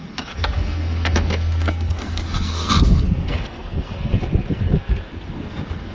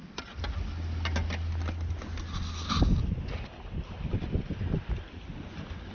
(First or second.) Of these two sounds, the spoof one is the first